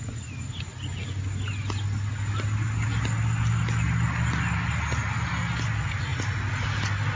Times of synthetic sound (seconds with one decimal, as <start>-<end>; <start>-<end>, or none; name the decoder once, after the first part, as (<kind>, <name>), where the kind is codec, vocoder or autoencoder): none